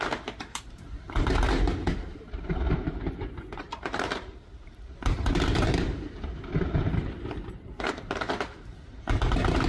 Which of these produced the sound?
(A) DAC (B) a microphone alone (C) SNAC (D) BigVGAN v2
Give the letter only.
D